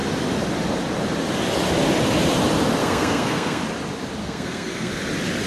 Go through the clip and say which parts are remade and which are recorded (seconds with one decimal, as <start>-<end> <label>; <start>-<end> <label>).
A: 0.0-2.8 recorded; 2.8-3.6 remade; 3.6-4.2 recorded; 4.2-4.9 remade; 4.9-5.5 recorded